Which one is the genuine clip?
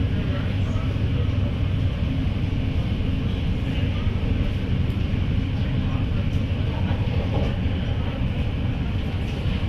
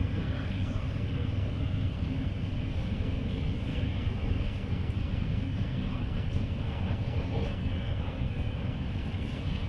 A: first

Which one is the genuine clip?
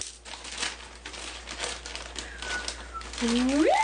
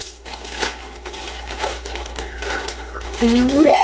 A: first